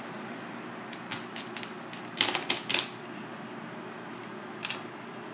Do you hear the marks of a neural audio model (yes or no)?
no